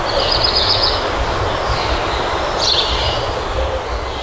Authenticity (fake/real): real